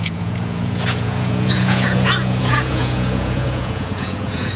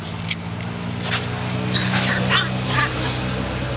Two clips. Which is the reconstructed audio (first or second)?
first